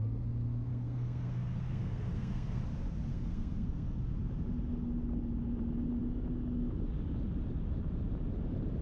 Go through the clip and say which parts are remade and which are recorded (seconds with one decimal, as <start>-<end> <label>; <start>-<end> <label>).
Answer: 0.0-0.7 recorded; 0.7-2.6 remade; 2.6-3.1 recorded; 3.1-4.0 remade; 4.0-8.8 recorded